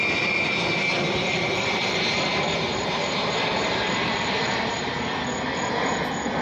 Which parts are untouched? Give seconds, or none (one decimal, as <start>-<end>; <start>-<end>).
0.0-1.3; 5.1-6.4